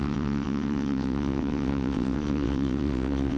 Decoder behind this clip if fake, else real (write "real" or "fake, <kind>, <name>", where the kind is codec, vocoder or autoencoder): fake, vocoder, WaveNeXt